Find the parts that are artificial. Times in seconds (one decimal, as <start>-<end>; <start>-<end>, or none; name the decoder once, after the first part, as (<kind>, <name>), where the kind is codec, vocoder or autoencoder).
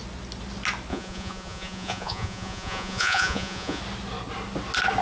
0.9-3.8 (vocoder, Vocos)